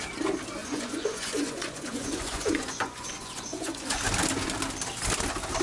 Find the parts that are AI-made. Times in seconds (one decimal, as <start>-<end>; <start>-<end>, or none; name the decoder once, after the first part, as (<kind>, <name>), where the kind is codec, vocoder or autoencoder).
0.6-4.0 (vocoder, Vocos)